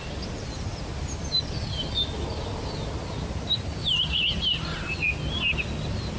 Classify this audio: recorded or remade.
recorded